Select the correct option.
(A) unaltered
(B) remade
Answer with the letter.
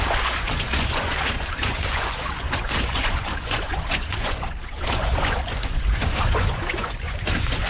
B